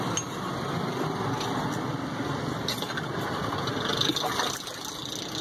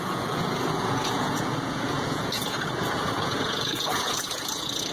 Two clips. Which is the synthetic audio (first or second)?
second